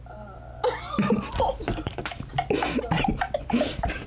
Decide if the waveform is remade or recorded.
recorded